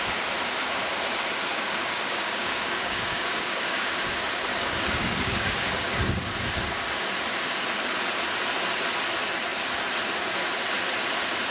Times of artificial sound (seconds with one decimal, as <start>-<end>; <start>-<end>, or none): 1.5-3.9; 4.5-6.1